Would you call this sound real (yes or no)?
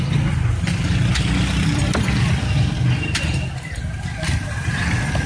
yes